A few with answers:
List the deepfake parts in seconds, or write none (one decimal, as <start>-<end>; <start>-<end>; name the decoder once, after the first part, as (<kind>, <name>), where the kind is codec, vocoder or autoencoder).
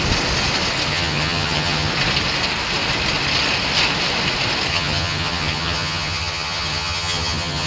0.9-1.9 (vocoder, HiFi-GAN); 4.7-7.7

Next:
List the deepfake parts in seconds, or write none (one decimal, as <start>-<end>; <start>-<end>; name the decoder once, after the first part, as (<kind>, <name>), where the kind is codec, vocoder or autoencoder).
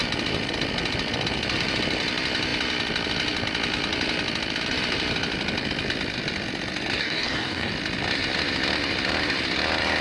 7.0-7.7 (codec, DAC)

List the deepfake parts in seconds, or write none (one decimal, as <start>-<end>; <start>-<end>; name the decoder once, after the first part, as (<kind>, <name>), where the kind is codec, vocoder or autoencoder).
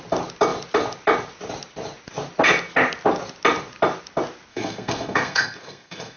4.5-6.2 (codec, SNAC)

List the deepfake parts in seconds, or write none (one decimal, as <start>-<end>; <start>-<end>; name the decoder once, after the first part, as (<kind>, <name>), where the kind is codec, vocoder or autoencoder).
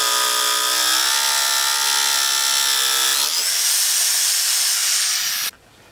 none